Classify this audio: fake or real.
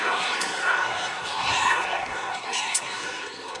fake